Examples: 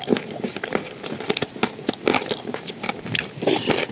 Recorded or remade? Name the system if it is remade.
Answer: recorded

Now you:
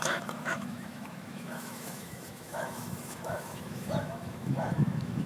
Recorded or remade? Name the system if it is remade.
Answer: remade, autoencoder, DAC-VAE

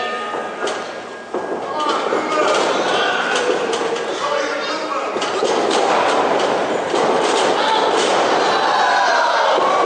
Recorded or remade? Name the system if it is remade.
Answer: recorded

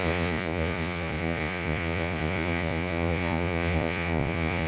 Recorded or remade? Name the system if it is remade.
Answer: remade, vocoder, Vocos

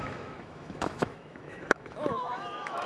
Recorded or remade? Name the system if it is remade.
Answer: remade, autoencoder, DAC-VAE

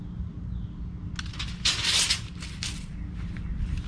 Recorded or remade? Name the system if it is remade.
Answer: recorded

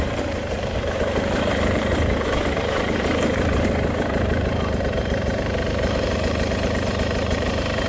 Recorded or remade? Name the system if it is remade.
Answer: remade, vocoder, BigVGAN v2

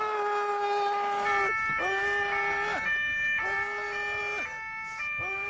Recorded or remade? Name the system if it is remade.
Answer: recorded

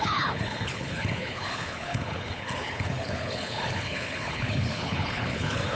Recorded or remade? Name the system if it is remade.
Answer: remade, codec, HILCodec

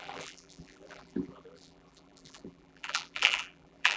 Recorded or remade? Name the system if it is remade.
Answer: remade, vocoder, BigVGAN v2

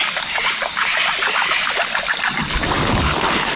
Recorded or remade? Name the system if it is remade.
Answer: recorded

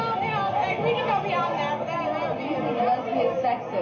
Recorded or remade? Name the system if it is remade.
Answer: recorded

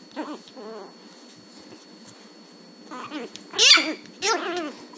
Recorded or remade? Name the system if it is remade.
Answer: recorded